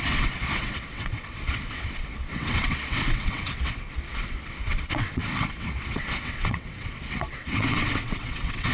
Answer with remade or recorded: remade